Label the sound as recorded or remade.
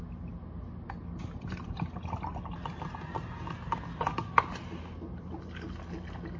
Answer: recorded